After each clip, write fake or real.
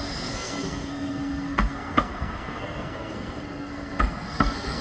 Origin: fake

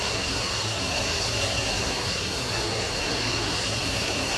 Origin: fake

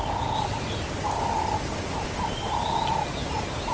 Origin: real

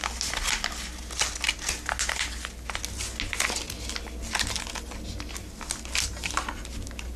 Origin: real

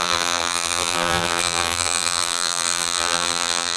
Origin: fake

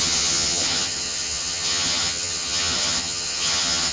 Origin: fake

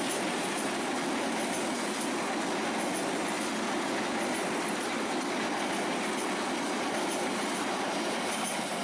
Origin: real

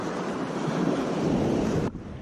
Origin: fake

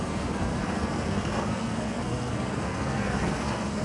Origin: fake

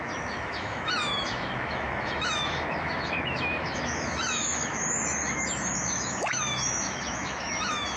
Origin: fake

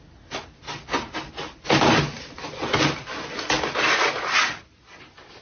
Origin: real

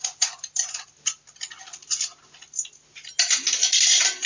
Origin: real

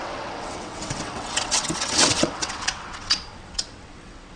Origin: fake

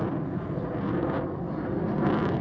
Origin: real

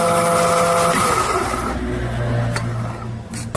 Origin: real